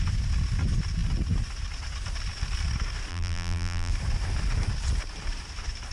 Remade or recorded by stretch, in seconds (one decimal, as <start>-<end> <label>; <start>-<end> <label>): 0.0-3.1 recorded; 3.1-3.9 remade; 3.9-5.9 recorded